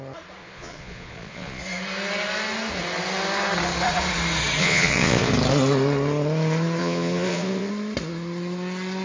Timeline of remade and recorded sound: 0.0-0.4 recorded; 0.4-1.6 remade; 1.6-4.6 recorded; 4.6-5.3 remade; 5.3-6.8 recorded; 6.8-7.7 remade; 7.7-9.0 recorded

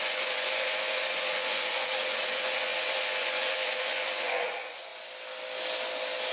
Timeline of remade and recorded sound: 0.0-4.9 remade; 4.9-6.3 recorded

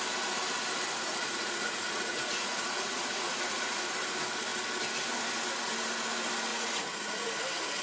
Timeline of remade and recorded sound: 0.0-1.1 recorded; 1.1-3.9 remade; 3.9-6.5 recorded; 6.5-7.2 remade; 7.2-7.8 recorded

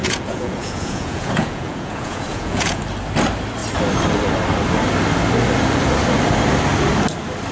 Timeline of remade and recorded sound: 0.0-2.8 remade; 2.8-7.5 recorded

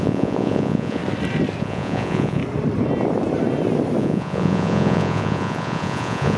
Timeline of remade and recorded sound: 0.0-1.0 remade; 1.0-1.6 recorded; 1.6-2.4 remade; 2.4-4.0 recorded; 4.0-6.4 remade

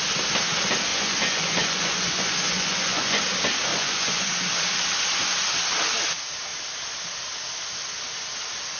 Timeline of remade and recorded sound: 0.0-0.9 recorded; 0.9-3.2 remade; 3.2-3.7 recorded; 3.7-4.3 remade; 4.3-8.8 recorded

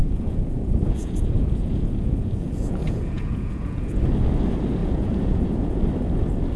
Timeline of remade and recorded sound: 0.0-4.0 remade; 4.0-4.8 recorded; 4.8-5.8 remade; 5.8-6.6 recorded